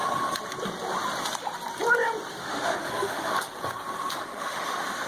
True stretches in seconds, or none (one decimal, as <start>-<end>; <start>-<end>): 0.0-2.3; 3.3-4.1